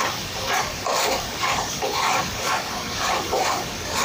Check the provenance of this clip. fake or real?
fake